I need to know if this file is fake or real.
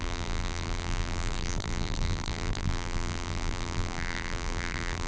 fake